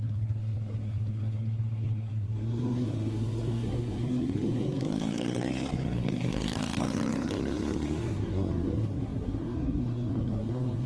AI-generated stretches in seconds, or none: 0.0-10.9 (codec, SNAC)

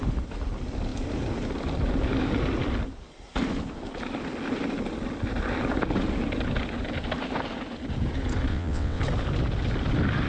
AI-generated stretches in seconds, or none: 8.5-9.0 (vocoder, WaveNeXt)